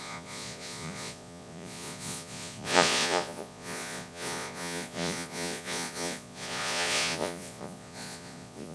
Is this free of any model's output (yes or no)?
no